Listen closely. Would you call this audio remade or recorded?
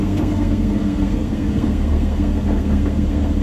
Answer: remade